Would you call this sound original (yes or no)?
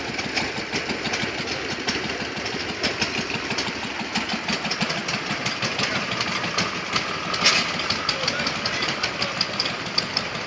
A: yes